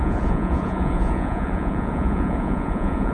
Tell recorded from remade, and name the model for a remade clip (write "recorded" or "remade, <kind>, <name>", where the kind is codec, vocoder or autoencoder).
remade, vocoder, Vocos